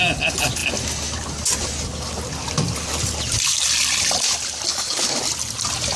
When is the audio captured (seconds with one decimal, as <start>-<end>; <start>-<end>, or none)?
0.0-4.7; 5.2-6.0